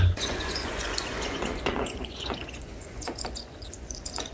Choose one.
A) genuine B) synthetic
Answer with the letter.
B